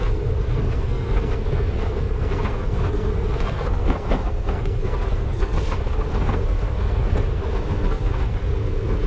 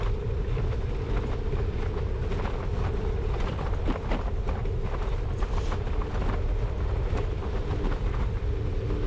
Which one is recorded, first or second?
second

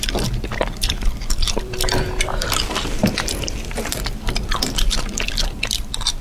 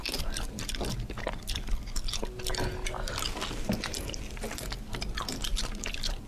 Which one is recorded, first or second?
second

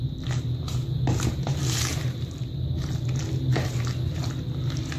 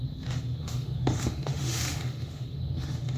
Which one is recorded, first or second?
first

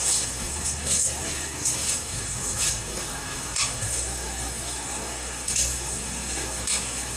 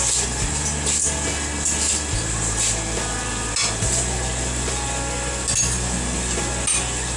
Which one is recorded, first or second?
second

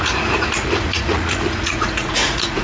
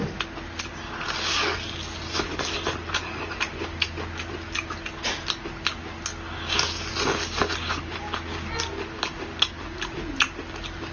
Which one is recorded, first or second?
second